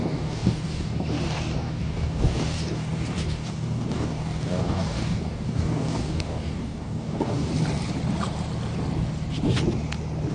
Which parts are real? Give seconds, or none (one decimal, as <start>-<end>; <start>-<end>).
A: 7.5-10.3

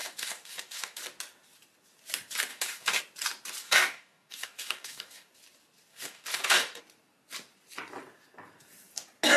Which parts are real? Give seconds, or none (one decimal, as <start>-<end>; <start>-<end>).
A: 1.0-2.5; 3.0-3.6; 5.3-5.9; 6.8-9.4